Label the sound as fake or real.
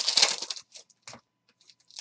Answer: real